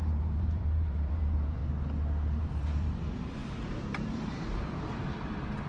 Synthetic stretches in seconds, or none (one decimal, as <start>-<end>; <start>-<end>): 0.0-1.6; 2.4-5.7